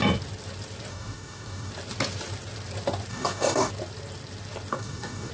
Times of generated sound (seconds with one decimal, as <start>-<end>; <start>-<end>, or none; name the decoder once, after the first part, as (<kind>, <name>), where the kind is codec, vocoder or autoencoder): 0.9-1.7 (codec, DAC); 3.1-3.7; 4.7-5.3